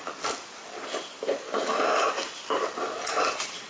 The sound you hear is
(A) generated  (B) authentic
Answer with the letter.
B